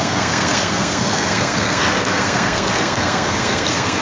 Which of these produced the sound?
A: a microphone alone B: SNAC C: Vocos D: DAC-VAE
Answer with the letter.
B